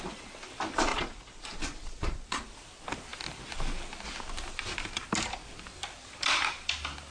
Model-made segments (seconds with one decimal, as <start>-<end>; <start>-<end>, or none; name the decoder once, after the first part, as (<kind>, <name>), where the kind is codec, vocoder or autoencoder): 0.9-2.4 (vocoder, Vocos)